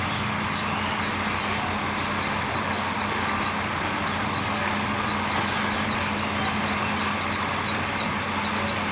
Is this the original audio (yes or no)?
yes